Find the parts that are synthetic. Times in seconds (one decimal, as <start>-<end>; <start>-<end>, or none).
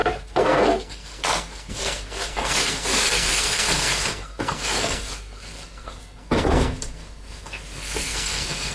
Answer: 0.0-8.7